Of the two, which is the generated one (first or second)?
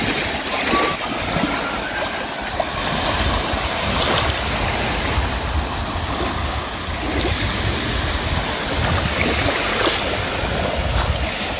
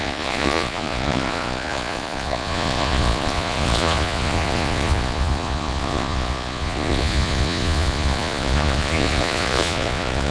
second